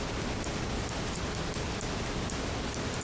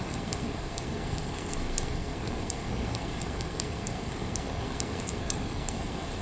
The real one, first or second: first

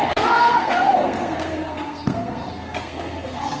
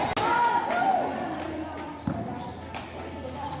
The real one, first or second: second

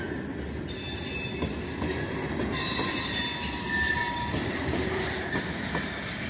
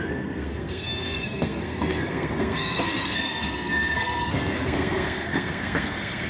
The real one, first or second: first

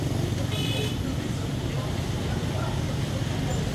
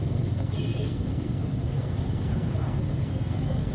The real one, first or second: first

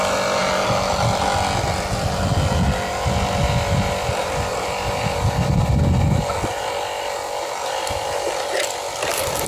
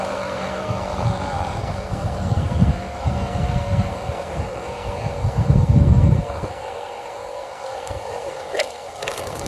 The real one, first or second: first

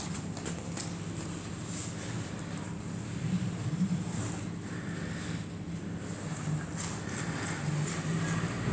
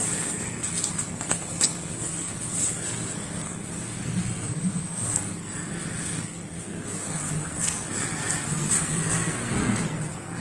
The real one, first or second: first